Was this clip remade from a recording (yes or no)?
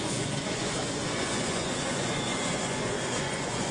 yes